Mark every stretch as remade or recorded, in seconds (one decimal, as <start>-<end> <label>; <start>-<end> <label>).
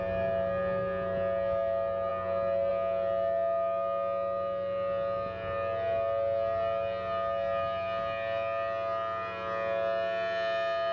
0.0-10.9 recorded